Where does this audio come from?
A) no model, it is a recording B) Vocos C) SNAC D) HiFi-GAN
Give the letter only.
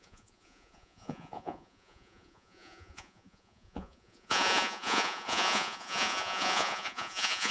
B